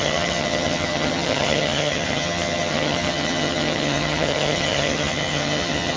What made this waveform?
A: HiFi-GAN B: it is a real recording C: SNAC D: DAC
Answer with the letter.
A